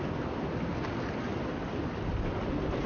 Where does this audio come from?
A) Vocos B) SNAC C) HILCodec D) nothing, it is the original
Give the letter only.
D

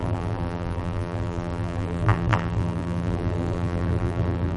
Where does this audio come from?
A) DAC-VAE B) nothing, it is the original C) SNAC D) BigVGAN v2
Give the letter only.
D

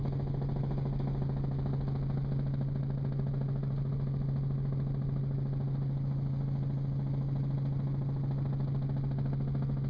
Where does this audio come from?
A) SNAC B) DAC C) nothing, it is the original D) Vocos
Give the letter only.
C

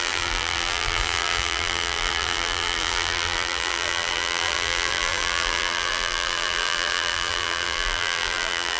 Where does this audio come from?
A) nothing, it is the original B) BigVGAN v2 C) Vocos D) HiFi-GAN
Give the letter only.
B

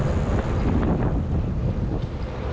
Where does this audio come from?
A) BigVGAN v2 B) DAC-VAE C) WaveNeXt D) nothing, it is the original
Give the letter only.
D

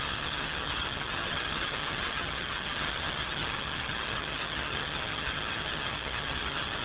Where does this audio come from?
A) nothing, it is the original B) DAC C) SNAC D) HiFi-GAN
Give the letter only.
D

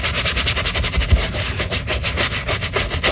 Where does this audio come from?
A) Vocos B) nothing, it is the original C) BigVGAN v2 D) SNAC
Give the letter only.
B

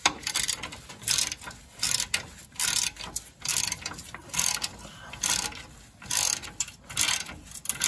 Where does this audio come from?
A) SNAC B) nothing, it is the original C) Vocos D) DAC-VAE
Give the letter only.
B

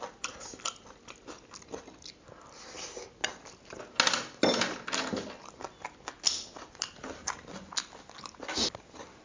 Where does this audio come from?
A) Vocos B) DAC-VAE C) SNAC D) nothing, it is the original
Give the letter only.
D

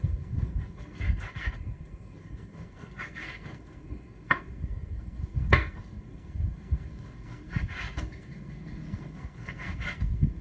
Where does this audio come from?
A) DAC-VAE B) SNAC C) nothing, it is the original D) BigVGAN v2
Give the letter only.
B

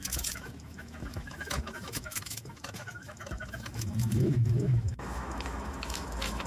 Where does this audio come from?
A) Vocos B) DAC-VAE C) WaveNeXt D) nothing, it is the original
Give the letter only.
B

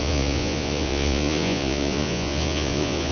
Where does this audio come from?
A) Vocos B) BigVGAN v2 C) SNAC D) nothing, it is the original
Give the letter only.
A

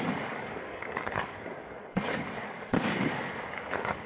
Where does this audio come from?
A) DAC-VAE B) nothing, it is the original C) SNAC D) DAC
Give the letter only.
D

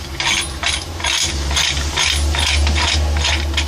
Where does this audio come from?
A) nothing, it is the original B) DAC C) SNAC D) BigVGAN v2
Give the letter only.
A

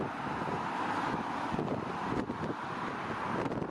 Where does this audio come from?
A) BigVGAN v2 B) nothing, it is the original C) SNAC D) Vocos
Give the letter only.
B